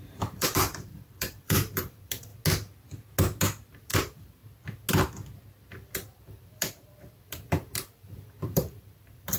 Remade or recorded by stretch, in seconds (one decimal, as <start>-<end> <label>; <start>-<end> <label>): 0.0-2.3 remade; 2.3-3.7 recorded; 3.7-4.4 remade; 4.4-5.7 recorded; 5.7-9.4 remade